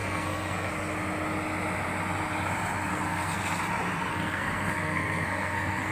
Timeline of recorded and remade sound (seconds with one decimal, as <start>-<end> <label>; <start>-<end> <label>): 0.0-0.7 remade; 0.7-2.9 recorded; 2.9-3.6 remade; 3.6-4.1 recorded; 4.1-5.9 remade